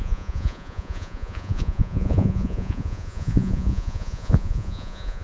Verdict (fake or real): fake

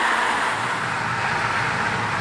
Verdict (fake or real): real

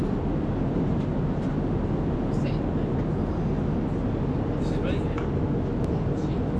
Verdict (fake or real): real